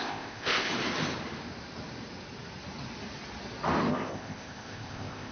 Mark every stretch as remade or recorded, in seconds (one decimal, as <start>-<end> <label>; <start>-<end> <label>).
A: 0.0-0.7 remade; 0.7-3.9 recorded; 3.9-5.3 remade